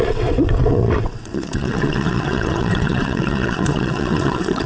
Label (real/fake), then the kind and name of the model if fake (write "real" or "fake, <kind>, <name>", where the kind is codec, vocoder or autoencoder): fake, vocoder, WaveNeXt